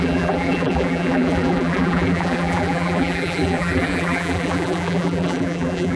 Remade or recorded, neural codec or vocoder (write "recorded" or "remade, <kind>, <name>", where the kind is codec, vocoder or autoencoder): remade, vocoder, BigVGAN v2